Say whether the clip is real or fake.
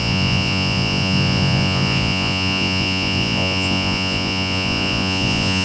fake